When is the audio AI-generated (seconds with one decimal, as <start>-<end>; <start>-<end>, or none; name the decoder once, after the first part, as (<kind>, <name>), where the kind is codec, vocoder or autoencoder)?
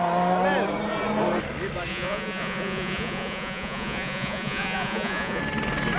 1.9-5.4 (vocoder, Vocos)